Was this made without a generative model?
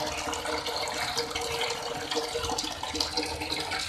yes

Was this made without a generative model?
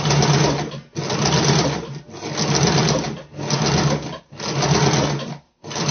yes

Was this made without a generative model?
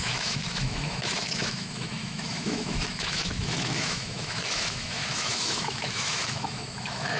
no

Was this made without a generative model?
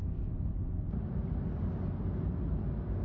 yes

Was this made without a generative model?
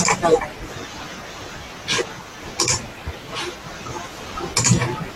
yes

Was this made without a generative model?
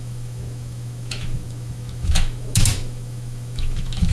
no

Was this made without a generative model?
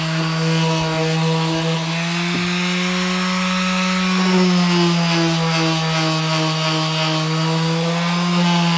yes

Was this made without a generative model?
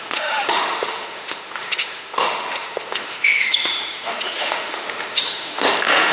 no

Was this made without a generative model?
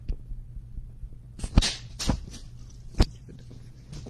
yes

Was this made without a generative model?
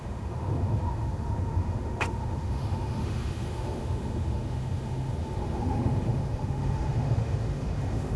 no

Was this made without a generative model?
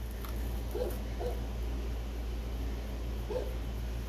yes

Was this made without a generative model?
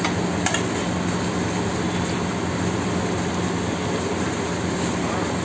yes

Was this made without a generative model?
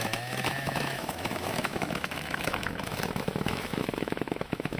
no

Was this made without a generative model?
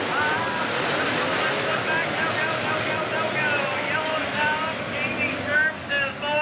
yes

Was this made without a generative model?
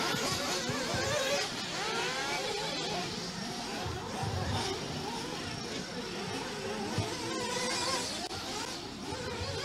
yes